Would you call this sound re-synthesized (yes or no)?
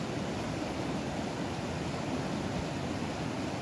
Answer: no